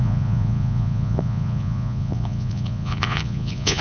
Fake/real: fake